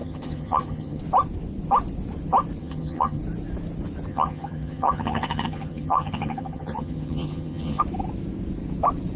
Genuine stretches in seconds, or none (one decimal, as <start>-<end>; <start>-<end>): 1.0-2.6; 3.2-4.1; 7.8-9.2